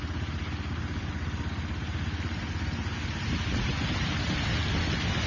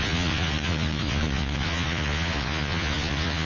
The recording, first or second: first